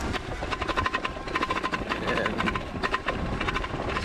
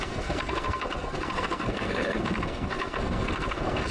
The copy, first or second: second